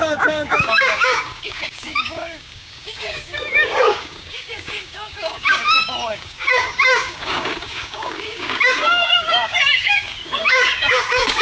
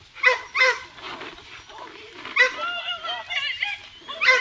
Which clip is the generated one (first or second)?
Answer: first